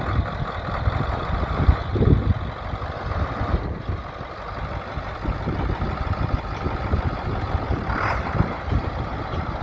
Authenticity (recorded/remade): recorded